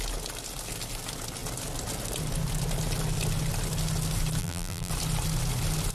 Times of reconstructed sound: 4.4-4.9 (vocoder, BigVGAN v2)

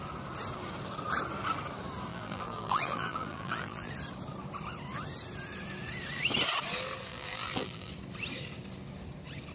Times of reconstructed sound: 2.1-3.9 (vocoder, BigVGAN v2); 7.1-7.9

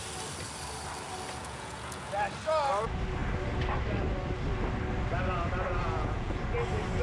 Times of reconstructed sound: 1.4-2.1 (vocoder, Vocos); 5.8-6.4

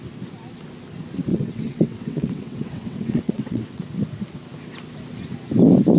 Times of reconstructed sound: 1.3-3.8 (vocoder, WaveNeXt)

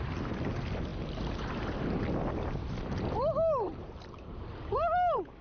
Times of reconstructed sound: 0.9-2.0 (vocoder, BigVGAN v2); 3.7-4.5

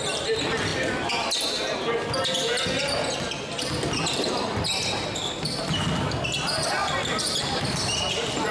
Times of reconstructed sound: none

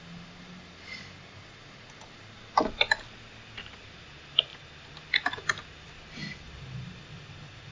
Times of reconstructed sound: none